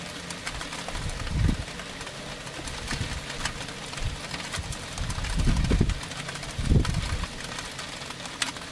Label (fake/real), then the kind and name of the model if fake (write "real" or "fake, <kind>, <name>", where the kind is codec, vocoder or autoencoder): real